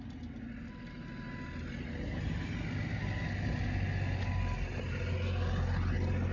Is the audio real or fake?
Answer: real